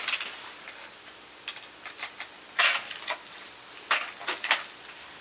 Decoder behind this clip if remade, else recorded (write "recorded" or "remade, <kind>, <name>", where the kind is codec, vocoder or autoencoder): recorded